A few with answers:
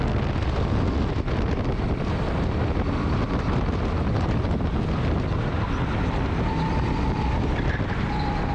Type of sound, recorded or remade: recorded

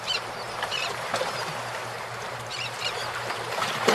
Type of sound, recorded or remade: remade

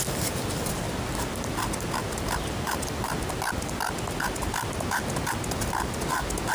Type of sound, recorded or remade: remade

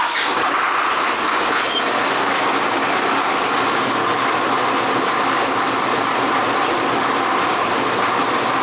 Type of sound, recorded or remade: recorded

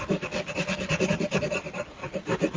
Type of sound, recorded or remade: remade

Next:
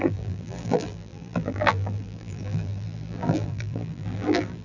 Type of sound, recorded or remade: remade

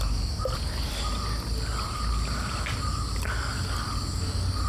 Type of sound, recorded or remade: recorded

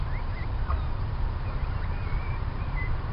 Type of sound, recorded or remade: remade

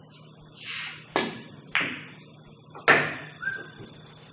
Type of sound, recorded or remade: recorded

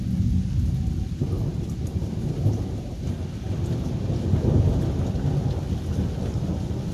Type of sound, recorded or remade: recorded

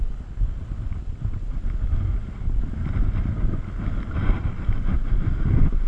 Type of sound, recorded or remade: recorded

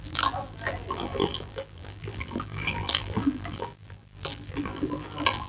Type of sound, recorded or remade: remade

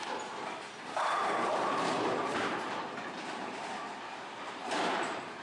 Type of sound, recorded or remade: remade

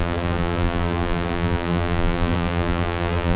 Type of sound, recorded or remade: remade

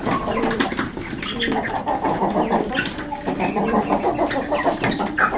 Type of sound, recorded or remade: remade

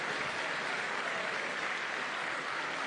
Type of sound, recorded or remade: recorded